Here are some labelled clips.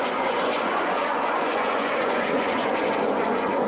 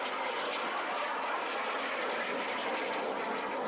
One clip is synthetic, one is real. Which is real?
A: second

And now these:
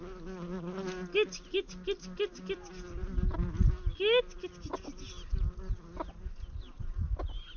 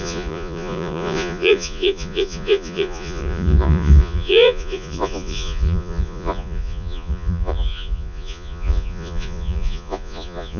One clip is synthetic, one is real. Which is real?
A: first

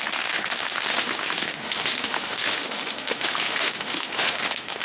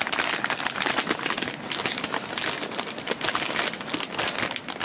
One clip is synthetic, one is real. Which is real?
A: second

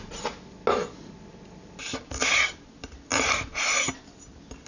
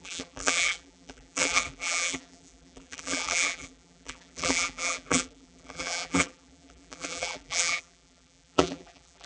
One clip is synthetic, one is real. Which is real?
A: first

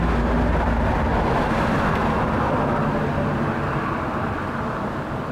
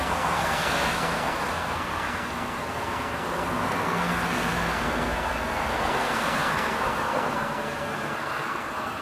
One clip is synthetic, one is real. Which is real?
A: first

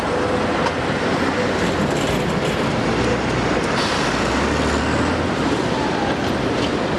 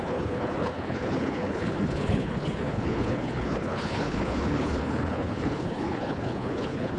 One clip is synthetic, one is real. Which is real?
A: first